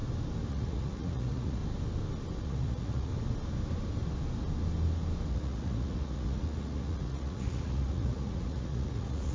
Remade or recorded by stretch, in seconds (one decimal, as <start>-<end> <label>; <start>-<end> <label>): 0.0-0.5 recorded; 0.5-1.6 remade; 1.6-2.4 recorded; 2.4-3.1 remade; 3.1-5.3 recorded; 5.3-9.3 remade